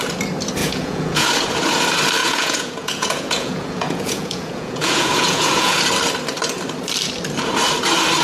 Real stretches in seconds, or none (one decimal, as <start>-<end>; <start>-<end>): 0.0-0.6; 1.3-2.2; 5.8-8.2

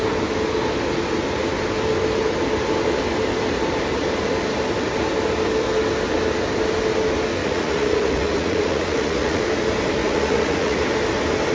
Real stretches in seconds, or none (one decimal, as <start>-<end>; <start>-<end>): 0.0-7.4; 9.4-10.0; 10.8-11.5